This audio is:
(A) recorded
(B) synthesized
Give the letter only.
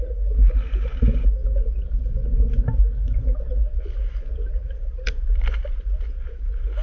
A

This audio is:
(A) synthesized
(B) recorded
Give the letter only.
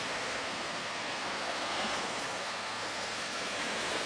A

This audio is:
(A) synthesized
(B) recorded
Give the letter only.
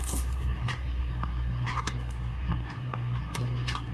A